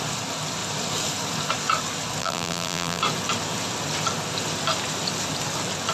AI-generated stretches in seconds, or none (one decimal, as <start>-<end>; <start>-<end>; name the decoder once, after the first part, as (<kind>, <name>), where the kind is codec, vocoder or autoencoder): 2.2-3.0 (vocoder, BigVGAN v2)